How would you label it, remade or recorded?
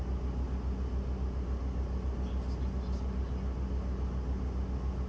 recorded